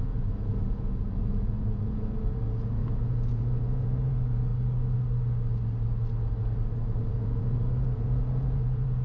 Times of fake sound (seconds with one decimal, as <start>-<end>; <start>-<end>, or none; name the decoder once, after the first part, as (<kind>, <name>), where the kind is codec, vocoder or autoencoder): 0.0-4.5 (vocoder, Vocos); 7.1-9.0